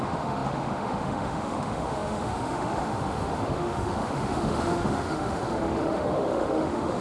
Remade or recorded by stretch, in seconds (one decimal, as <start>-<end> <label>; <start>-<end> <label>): 0.0-7.0 remade